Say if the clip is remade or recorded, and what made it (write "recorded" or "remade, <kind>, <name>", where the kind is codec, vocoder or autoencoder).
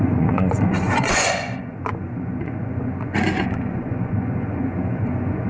remade, vocoder, Vocos